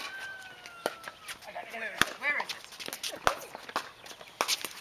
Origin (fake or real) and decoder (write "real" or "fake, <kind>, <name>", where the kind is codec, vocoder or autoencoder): real